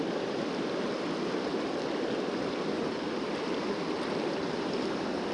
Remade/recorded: recorded